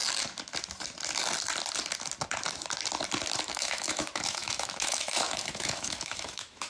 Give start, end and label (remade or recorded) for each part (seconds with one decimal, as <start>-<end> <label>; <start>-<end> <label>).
0.0-3.5 recorded; 3.5-6.7 remade